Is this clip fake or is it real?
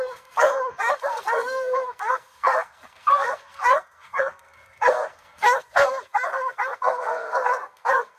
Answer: fake